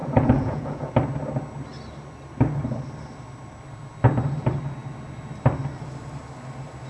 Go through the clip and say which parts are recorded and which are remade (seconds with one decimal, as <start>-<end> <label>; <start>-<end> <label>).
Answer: 0.0-0.9 remade; 0.9-6.9 recorded